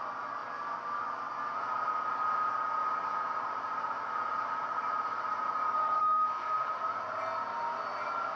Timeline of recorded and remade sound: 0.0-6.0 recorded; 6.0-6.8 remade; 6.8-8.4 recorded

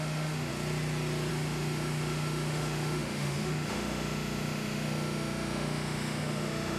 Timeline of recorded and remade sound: 0.0-0.5 remade; 0.5-1.3 recorded; 1.3-6.8 remade

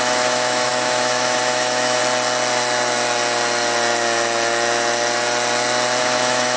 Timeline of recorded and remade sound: 0.0-2.0 remade; 2.0-6.0 recorded; 6.0-6.6 remade

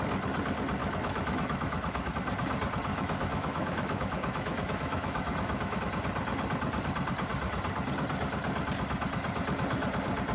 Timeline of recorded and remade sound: 0.0-0.8 recorded; 0.8-2.1 remade; 2.1-2.9 recorded; 2.9-5.8 remade; 5.8-10.3 recorded